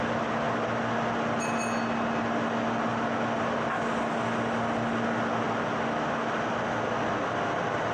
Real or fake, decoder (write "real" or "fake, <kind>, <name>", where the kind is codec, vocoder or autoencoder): real